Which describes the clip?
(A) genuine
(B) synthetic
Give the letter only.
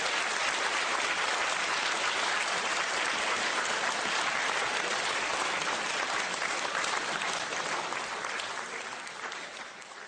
A